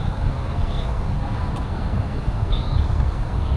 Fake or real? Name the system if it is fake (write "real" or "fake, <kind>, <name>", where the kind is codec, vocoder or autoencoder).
fake, codec, SNAC